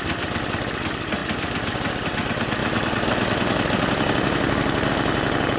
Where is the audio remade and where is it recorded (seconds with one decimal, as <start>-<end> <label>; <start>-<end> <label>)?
0.0-2.6 recorded; 2.6-4.9 remade; 4.9-5.6 recorded